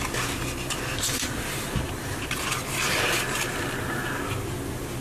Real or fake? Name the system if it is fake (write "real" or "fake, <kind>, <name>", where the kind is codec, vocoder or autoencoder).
real